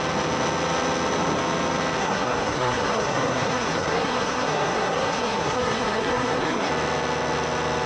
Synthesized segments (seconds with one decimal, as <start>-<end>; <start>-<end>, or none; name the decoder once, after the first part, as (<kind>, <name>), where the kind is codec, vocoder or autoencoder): 2.0-6.7 (codec, SNAC)